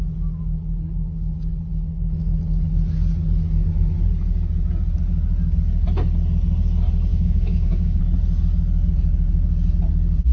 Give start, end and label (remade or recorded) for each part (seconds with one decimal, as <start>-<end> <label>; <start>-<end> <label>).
0.0-7.1 recorded; 7.1-8.0 remade; 8.0-10.3 recorded